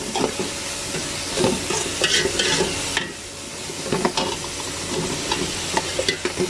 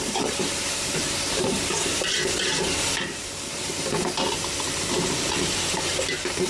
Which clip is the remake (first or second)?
second